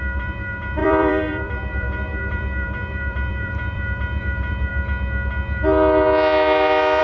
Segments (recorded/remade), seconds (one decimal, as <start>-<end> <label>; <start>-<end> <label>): 0.0-4.7 remade; 4.7-7.0 recorded